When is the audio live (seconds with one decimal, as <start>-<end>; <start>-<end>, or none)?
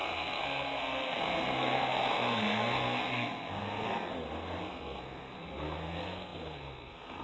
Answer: 4.1-4.6